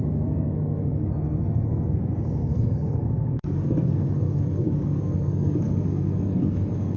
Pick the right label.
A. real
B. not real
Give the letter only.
B